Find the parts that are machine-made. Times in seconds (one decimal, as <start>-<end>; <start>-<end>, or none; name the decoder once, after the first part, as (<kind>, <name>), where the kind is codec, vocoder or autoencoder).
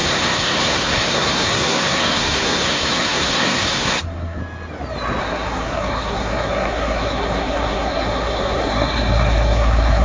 0.0-4.4 (codec, SNAC); 5.2-10.0